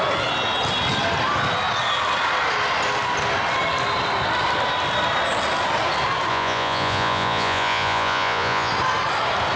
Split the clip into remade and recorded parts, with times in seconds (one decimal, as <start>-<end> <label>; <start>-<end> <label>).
0.0-6.3 recorded; 6.3-8.7 remade; 8.7-9.6 recorded